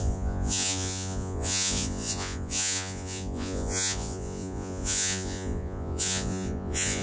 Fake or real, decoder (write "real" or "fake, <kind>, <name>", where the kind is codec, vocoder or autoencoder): fake, vocoder, Vocos